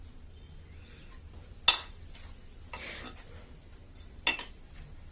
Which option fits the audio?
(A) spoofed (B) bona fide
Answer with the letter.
B